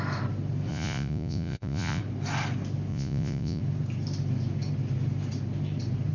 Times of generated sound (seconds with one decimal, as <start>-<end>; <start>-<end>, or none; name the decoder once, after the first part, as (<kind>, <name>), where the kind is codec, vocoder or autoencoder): 0.7-2.0 (vocoder, Vocos); 2.9-3.6